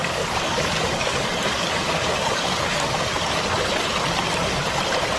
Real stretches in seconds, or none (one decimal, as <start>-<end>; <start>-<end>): 3.1-5.2